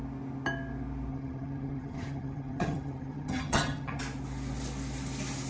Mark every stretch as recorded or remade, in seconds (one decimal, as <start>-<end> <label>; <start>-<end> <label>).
0.0-1.1 recorded; 1.1-4.0 remade; 4.0-5.5 recorded